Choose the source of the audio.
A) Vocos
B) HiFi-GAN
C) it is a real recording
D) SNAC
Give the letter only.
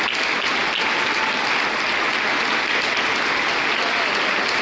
C